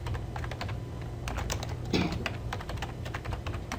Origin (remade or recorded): recorded